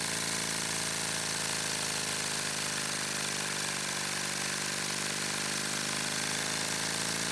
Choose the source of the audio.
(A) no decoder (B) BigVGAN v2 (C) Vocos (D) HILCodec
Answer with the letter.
A